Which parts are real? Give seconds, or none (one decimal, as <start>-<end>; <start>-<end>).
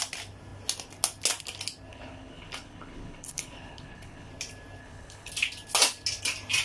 0.0-1.9; 4.3-4.8; 5.3-6.6